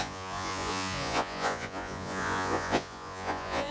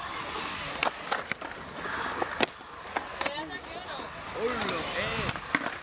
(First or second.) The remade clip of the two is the first